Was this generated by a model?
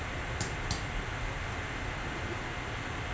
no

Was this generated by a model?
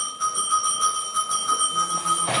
no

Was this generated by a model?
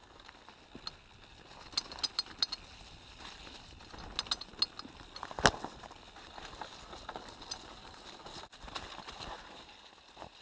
no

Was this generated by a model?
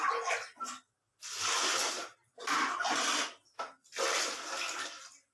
no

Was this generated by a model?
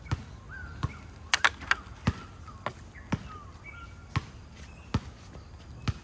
no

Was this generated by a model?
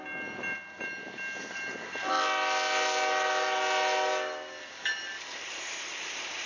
no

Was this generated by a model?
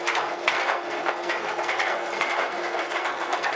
yes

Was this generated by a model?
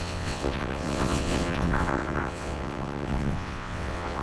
yes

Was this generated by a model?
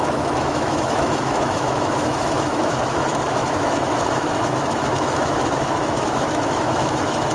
yes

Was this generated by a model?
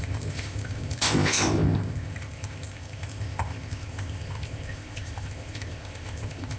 yes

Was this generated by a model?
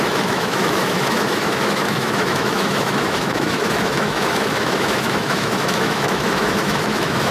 yes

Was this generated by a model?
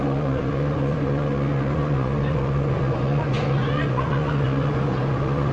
yes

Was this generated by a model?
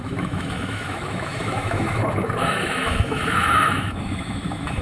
yes